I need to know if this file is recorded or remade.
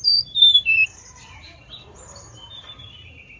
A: remade